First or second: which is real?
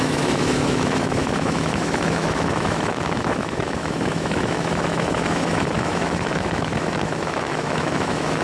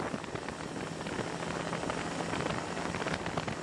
second